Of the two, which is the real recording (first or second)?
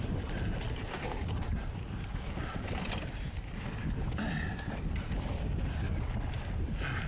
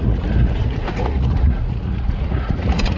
first